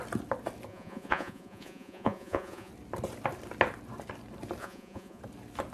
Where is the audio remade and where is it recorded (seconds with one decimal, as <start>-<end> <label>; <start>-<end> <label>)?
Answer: 0.0-0.7 recorded; 0.7-2.7 remade; 2.7-4.6 recorded; 4.6-5.2 remade; 5.2-5.7 recorded